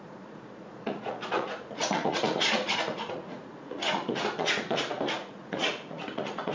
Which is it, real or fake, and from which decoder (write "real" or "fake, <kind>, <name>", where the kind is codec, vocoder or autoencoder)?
fake, vocoder, Vocos